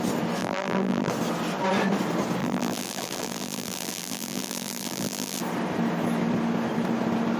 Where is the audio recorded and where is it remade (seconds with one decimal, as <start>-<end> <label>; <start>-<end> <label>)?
0.0-0.4 recorded; 0.4-1.1 remade; 1.1-2.4 recorded; 2.4-5.4 remade; 5.4-7.4 recorded